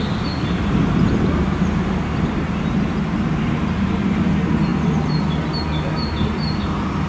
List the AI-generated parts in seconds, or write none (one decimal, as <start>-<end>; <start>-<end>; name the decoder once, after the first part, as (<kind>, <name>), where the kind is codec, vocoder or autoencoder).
none